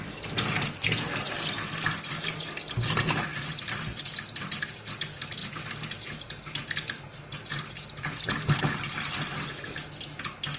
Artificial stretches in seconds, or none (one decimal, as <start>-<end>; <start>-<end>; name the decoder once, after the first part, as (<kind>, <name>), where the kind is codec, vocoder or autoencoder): none